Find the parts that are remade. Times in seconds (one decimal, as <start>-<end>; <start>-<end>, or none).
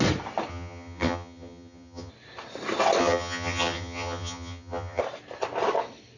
0.5-2.1; 3.0-5.0